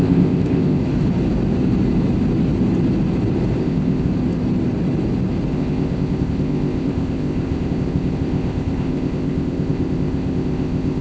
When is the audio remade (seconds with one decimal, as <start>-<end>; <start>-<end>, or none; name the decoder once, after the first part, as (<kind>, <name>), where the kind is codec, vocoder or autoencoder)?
0.0-0.8 (codec, ZipCodec); 3.6-4.1; 5.5-11.0